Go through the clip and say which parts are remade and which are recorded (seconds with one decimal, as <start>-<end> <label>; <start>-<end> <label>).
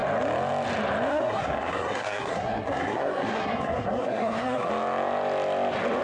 0.0-1.1 recorded; 1.1-4.7 remade; 4.7-6.0 recorded